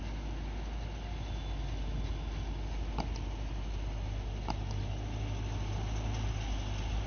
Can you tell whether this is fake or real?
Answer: real